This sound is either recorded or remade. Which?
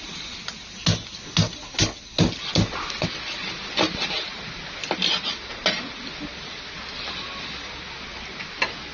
recorded